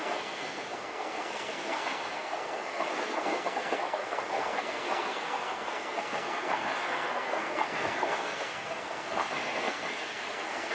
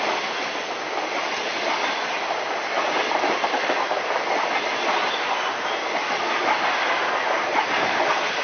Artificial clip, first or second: first